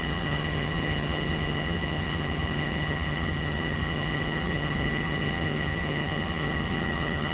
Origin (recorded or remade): remade